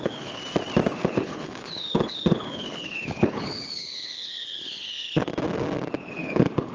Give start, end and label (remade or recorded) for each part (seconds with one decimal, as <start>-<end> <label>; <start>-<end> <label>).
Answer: 0.0-0.4 remade; 0.4-1.1 recorded; 1.1-5.3 remade; 5.3-5.9 recorded; 5.9-6.7 remade